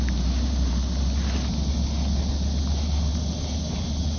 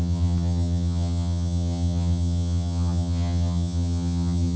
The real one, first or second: first